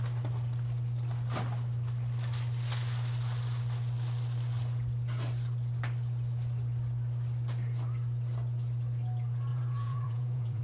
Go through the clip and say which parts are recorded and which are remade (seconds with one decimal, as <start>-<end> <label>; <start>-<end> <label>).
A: 0.0-9.5 recorded; 9.5-10.6 remade

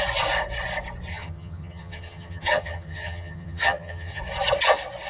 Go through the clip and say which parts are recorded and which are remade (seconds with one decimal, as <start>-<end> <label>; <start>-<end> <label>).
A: 0.0-1.1 recorded; 1.1-4.2 remade; 4.2-5.1 recorded